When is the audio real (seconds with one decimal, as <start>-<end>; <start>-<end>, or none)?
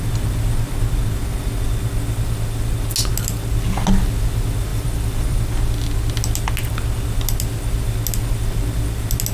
0.0-4.7; 5.5-9.3